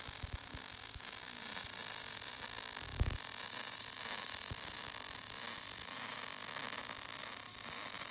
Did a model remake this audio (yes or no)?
no